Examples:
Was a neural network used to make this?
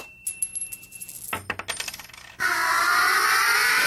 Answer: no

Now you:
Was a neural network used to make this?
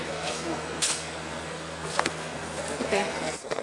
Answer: yes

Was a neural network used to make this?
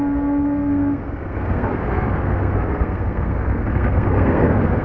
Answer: yes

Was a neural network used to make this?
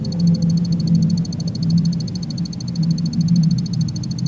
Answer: no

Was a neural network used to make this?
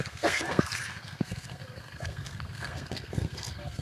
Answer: yes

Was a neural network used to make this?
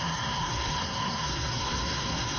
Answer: yes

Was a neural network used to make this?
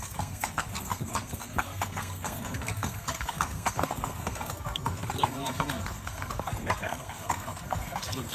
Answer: yes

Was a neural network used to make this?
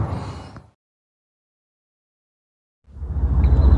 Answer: no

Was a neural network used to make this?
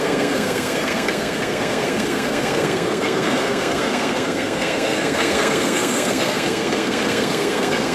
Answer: yes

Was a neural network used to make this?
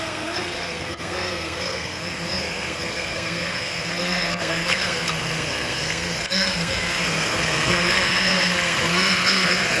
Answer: yes